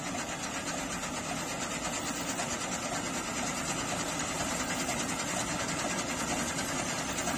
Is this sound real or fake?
real